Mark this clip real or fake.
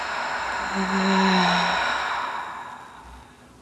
real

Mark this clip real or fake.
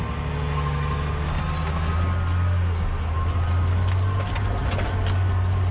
real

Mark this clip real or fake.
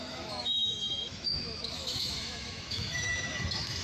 fake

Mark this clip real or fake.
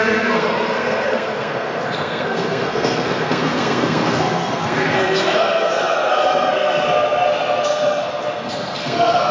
fake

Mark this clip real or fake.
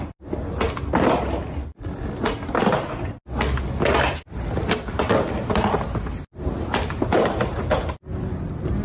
real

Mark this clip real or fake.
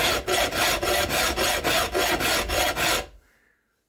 real